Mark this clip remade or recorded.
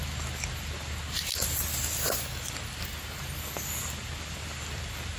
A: recorded